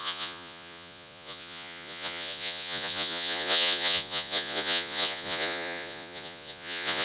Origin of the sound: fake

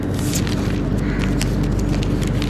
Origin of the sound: real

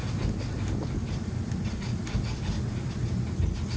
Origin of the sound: real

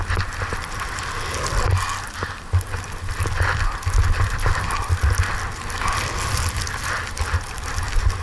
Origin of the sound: real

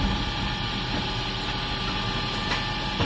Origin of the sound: real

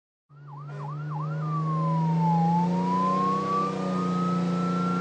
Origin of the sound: real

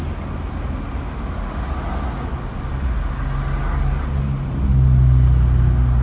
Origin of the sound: real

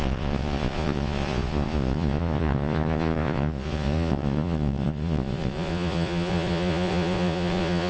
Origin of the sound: fake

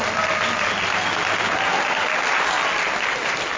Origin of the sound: real